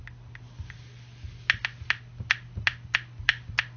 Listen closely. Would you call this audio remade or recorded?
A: recorded